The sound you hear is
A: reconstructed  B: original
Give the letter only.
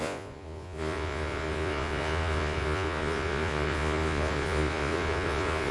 A